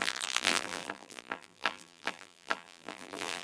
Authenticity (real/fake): fake